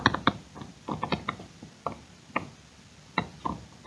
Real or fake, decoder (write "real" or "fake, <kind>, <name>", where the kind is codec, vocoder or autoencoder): real